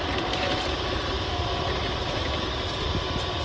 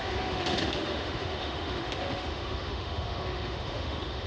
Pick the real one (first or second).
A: first